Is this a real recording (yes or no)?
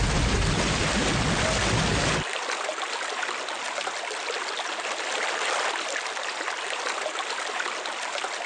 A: yes